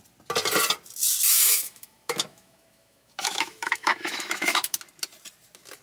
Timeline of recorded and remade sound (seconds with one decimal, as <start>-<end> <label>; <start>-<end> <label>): 0.0-1.3 recorded; 1.3-4.8 remade; 4.8-5.8 recorded